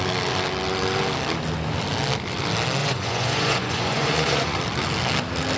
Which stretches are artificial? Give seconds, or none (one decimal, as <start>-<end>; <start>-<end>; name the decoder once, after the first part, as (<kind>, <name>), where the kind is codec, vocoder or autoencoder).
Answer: 2.8-4.6 (vocoder, Vocos)